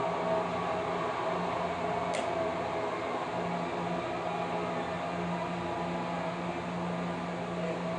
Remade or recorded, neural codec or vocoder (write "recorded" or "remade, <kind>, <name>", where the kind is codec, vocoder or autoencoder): recorded